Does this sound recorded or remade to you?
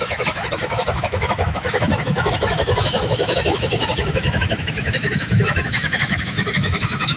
remade